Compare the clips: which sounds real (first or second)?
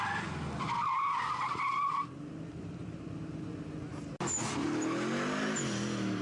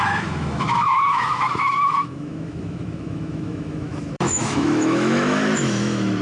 first